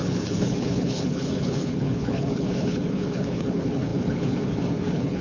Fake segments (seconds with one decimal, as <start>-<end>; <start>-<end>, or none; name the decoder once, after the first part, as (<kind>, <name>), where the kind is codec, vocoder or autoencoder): 0.0-5.2 (codec, HILCodec)